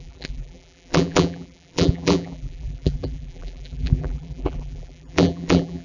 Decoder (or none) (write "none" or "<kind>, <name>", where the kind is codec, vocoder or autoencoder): vocoder, BigVGAN v2